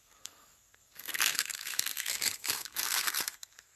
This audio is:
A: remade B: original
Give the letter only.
A